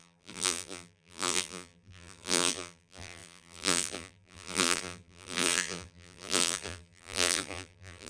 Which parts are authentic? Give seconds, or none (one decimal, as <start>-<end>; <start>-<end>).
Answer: none